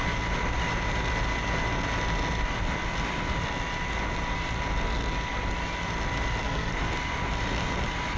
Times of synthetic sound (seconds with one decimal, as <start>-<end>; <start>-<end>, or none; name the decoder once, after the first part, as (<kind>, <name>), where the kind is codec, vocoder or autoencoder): 6.4-6.9 (codec, SNAC)